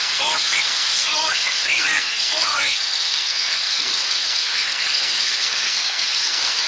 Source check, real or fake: fake